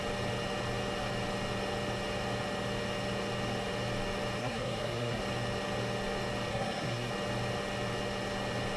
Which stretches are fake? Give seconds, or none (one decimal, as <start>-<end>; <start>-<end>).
4.4-5.2; 6.5-7.1